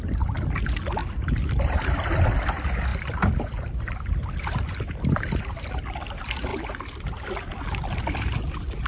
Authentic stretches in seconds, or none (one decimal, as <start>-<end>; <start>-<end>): 0.0-8.9